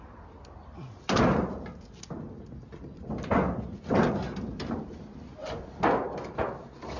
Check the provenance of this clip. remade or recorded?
recorded